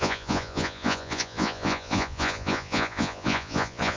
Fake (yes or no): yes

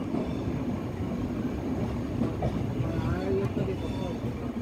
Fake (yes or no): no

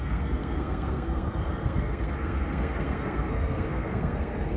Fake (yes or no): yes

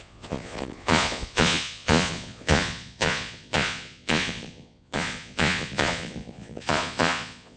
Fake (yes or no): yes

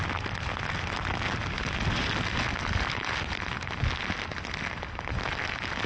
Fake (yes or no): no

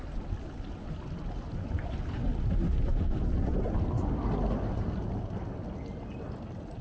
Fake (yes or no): no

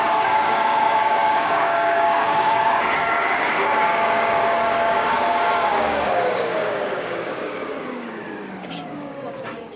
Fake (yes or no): yes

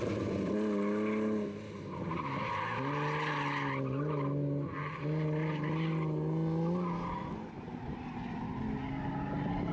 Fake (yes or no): no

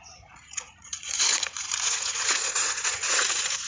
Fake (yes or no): yes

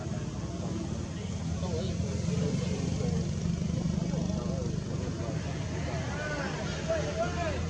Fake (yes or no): no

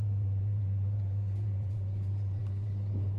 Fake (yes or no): yes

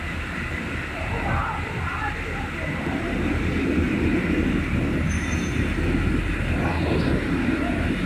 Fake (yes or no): no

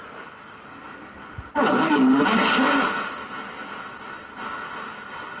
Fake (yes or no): yes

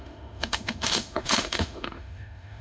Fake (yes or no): yes